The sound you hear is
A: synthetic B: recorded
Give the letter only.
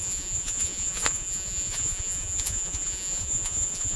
A